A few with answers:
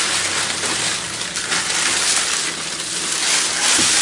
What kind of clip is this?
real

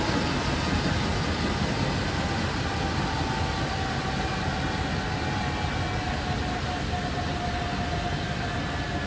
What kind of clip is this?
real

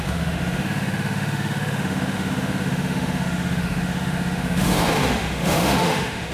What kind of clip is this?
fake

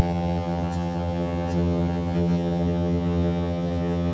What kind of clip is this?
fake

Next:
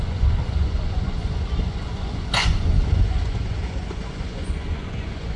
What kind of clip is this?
fake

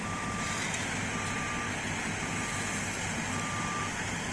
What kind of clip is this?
fake